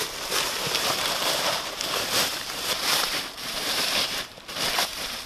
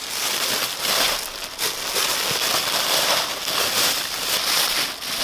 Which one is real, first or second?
second